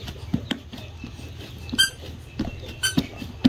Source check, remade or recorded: recorded